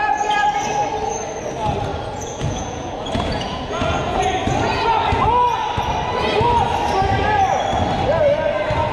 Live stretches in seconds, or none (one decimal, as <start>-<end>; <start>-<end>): 0.0-1.9; 4.2-8.9